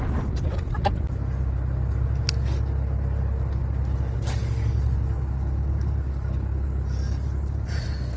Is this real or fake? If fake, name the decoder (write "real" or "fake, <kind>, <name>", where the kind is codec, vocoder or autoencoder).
real